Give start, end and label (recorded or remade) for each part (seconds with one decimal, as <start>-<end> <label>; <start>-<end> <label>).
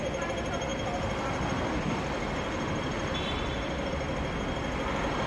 0.0-5.3 recorded